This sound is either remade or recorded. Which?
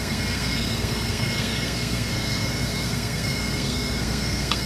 remade